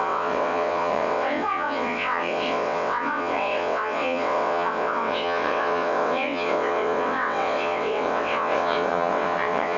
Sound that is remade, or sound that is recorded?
remade